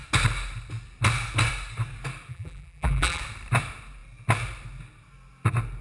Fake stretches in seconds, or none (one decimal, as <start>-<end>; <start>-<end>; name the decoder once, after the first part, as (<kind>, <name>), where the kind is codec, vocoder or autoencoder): 2.3-3.2 (vocoder, BigVGAN v2)